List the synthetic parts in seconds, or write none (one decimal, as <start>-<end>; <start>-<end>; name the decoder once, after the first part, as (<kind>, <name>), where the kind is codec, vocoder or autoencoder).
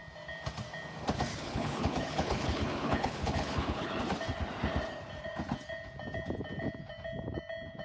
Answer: 1.3-4.0 (codec, HILCodec)